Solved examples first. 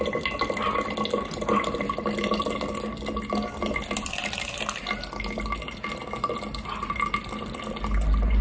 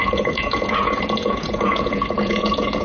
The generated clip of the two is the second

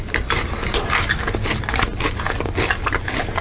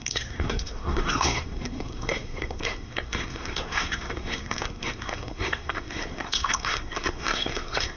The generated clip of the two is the second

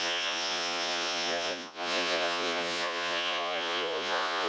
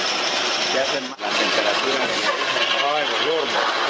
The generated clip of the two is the first